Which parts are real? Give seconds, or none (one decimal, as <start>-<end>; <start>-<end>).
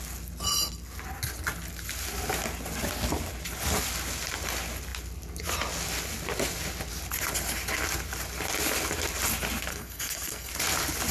0.0-9.7; 10.5-11.1